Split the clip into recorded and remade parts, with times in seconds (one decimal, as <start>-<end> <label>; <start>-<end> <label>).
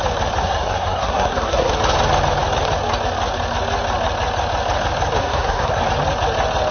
0.0-0.4 recorded; 0.4-1.7 remade; 1.7-5.2 recorded; 5.2-5.8 remade; 5.8-6.7 recorded